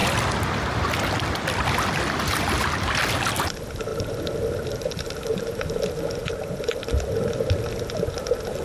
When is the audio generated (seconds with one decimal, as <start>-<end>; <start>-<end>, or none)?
0.0-1.9; 3.9-5.0; 6.2-7.7